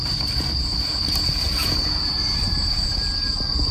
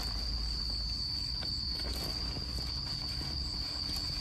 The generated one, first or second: first